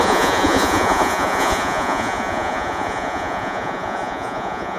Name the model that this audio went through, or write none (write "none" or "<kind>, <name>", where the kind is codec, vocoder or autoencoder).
vocoder, Vocos